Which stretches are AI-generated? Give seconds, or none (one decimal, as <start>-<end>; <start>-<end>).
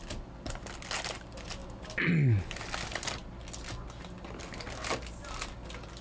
none